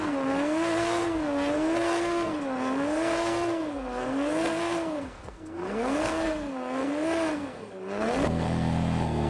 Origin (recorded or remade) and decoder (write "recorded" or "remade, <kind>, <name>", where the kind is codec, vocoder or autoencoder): remade, codec, SNAC